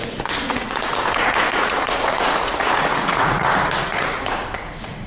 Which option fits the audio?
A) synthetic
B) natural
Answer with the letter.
A